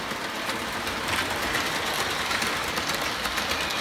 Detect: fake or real real